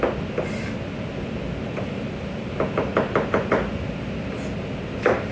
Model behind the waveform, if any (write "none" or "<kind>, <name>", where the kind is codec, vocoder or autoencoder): none